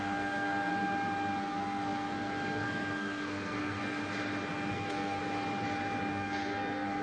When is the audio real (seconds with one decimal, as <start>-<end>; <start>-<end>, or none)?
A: 0.7-1.4; 4.0-4.7; 5.2-6.1